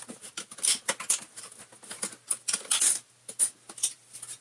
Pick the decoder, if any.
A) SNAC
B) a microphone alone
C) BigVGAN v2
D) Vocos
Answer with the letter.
B